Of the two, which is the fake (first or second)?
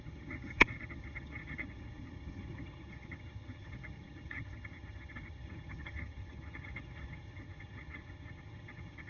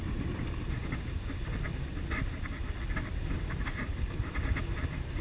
first